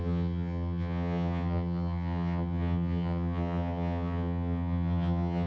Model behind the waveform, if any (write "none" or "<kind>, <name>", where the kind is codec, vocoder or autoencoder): vocoder, HiFi-GAN